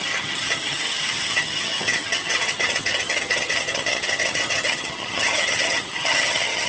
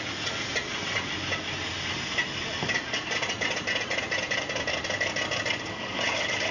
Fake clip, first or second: first